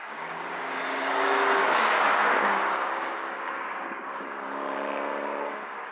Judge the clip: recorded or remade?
remade